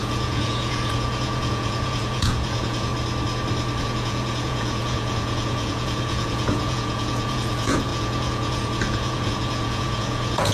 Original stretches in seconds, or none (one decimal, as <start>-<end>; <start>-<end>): 2.9-3.8